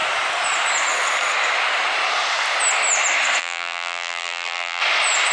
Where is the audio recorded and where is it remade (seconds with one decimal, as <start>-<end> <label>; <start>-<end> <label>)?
0.0-3.4 recorded; 3.4-4.8 remade; 4.8-5.3 recorded